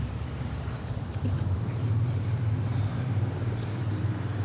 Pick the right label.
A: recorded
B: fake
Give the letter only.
B